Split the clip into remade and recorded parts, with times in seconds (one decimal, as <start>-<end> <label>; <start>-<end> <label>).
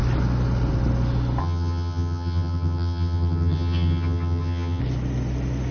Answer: 0.0-1.4 recorded; 1.4-4.8 remade; 4.8-5.7 recorded